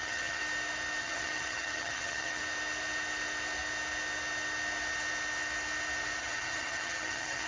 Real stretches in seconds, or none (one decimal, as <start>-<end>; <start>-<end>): 0.4-1.0; 2.4-6.2